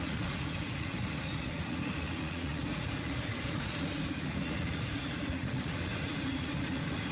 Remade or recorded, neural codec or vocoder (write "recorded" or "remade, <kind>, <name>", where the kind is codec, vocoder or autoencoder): remade, vocoder, Vocos